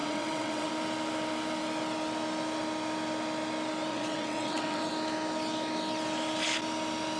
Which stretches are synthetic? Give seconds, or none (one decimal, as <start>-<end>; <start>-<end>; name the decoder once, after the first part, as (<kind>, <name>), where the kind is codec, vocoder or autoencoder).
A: 0.0-0.7 (vocoder, WaveNeXt); 3.9-4.9